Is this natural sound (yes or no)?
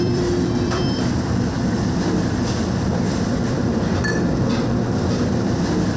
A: no